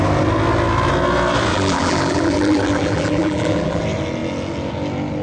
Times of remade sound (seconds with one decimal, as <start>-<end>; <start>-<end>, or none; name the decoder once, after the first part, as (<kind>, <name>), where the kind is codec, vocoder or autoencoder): 1.5-3.8 (vocoder, BigVGAN v2)